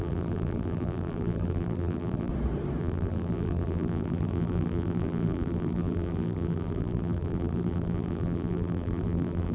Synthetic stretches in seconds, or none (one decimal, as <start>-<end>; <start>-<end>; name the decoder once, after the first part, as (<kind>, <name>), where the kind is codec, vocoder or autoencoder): 0.0-2.3 (vocoder, BigVGAN v2); 2.8-9.5